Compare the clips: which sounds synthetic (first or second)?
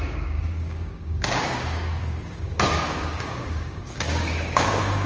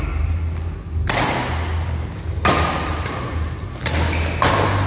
first